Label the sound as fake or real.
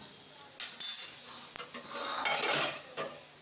real